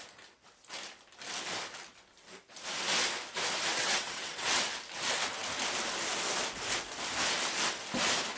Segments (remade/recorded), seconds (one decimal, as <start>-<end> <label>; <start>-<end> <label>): 0.0-3.7 recorded; 3.7-4.6 remade; 4.6-8.4 recorded